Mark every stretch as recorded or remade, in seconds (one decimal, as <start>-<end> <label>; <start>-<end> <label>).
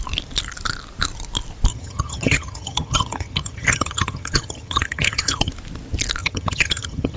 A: 0.0-1.7 recorded; 1.7-5.5 remade; 5.5-6.2 recorded; 6.2-7.2 remade